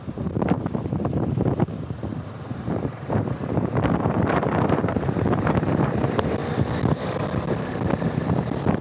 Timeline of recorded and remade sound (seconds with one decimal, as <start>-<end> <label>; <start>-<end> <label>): 0.0-6.4 remade; 6.4-8.2 recorded; 8.2-8.8 remade